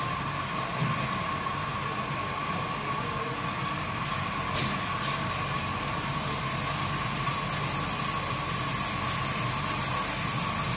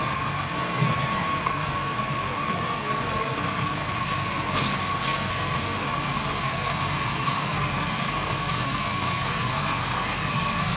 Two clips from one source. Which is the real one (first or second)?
first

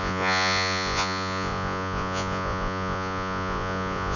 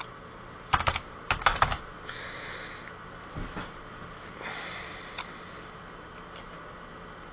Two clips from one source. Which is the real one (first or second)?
second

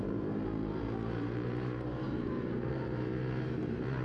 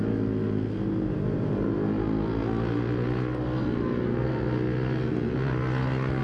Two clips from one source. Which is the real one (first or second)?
second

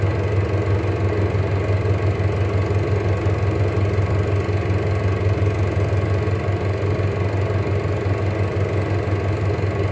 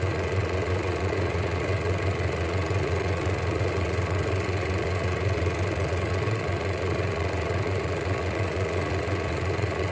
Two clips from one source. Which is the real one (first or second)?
first